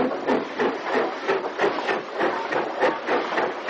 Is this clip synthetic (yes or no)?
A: no